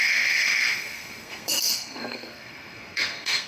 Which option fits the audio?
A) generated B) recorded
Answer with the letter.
A